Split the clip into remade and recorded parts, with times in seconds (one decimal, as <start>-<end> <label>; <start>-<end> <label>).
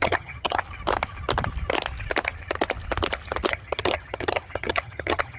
0.0-0.6 remade; 0.6-3.5 recorded; 3.5-5.4 remade